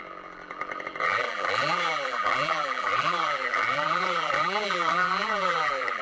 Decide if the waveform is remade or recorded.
remade